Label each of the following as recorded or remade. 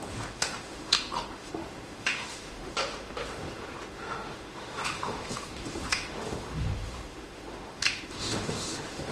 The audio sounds remade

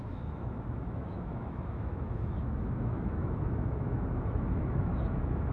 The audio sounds remade